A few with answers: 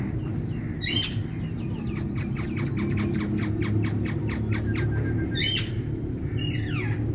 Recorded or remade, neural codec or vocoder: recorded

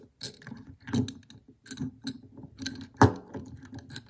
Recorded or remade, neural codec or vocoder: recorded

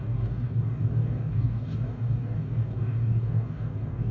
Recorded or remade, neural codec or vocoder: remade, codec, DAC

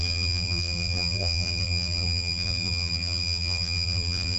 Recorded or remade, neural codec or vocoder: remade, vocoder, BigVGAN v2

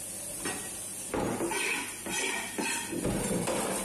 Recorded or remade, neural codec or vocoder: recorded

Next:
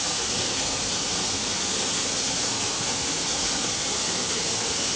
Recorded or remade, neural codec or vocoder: remade, codec, SNAC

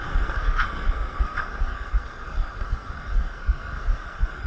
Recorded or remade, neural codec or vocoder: remade, codec, SNAC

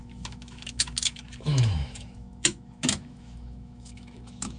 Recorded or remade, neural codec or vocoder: remade, autoencoder, DAC-VAE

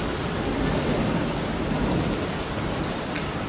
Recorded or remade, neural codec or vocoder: recorded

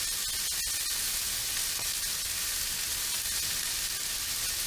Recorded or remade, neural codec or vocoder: recorded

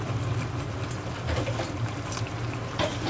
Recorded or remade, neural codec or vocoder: recorded